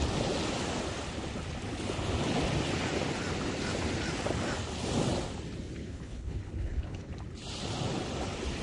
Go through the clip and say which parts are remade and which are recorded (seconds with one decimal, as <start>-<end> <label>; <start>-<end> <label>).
0.0-5.8 recorded; 5.8-7.1 remade; 7.1-8.6 recorded